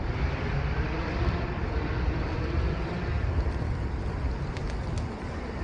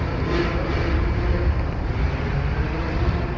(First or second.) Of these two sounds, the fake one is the first